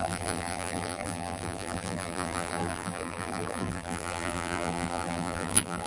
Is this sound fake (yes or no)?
yes